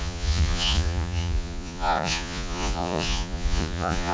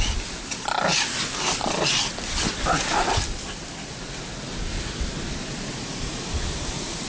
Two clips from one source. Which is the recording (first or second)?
second